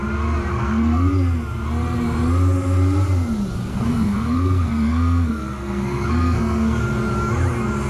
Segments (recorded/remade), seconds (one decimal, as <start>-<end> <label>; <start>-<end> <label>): 0.0-0.5 recorded; 0.5-1.1 remade; 1.1-3.7 recorded; 3.7-6.8 remade; 6.8-7.9 recorded